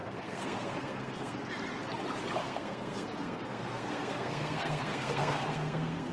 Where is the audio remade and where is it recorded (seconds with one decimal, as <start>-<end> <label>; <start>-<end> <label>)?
0.0-1.5 remade; 1.5-2.4 recorded; 2.4-6.1 remade